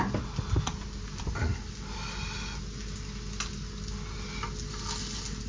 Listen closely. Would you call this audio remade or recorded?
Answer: recorded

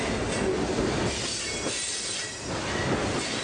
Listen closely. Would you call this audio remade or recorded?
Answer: recorded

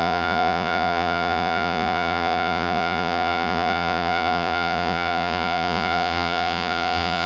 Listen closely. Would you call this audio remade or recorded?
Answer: remade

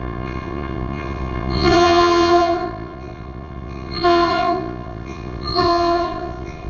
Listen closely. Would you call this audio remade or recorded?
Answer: remade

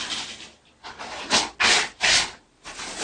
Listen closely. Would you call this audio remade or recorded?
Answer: recorded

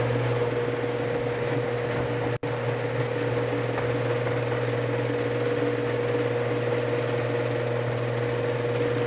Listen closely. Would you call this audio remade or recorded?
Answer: recorded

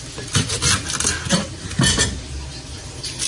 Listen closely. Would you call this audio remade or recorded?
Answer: recorded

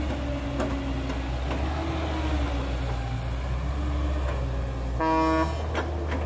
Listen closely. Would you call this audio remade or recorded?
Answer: recorded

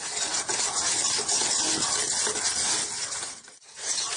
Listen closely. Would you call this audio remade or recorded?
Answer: recorded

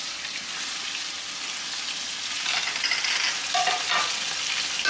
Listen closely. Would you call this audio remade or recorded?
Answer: recorded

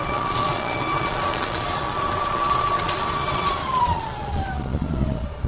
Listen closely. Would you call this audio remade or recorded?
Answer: remade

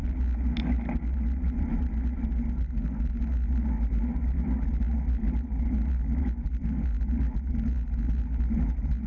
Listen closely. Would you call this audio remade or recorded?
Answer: recorded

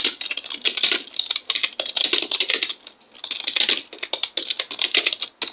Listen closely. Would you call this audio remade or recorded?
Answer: recorded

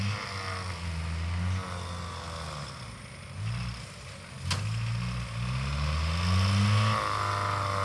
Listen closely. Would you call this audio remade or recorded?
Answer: recorded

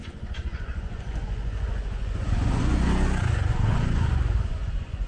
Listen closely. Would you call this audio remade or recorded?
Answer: remade